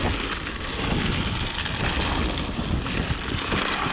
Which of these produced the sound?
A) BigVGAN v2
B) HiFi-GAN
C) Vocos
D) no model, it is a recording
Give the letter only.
D